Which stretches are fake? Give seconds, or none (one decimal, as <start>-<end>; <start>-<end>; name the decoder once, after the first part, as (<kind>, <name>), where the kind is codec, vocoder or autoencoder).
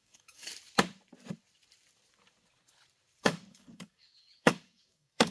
0.0-0.5 (codec, DAC); 3.2-5.3